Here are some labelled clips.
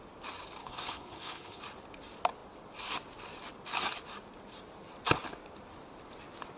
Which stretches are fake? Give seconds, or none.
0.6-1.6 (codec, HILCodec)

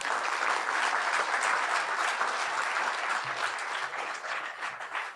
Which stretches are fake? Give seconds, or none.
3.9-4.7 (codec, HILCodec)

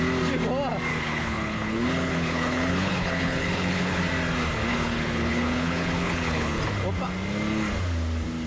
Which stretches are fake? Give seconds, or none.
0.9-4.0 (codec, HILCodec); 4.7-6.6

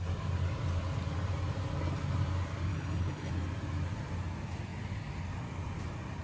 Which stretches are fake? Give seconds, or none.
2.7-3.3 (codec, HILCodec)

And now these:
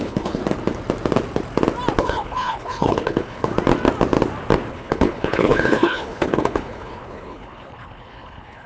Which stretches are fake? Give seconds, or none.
0.0-0.4 (codec, HILCodec); 2.0-3.5; 4.7-8.7

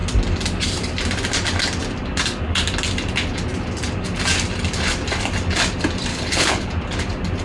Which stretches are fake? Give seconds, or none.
6.1-6.7 (codec, HILCodec)